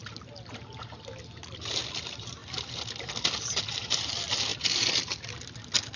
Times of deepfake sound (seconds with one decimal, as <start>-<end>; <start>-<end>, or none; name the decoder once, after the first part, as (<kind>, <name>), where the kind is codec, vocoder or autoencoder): none